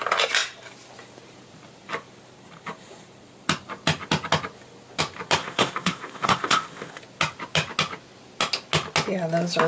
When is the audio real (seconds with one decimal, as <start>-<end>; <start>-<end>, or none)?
0.0-5.4; 7.0-9.7